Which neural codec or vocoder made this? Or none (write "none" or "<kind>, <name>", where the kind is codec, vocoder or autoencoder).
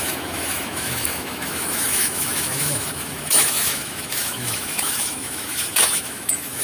autoencoder, DAC-VAE